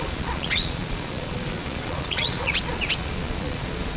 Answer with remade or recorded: remade